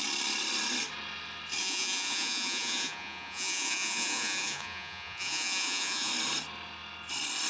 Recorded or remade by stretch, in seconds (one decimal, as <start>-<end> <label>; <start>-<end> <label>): 0.0-1.6 recorded; 1.6-6.1 remade; 6.1-7.5 recorded